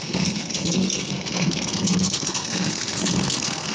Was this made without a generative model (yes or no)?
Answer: no